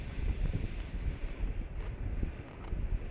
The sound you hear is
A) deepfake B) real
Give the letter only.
A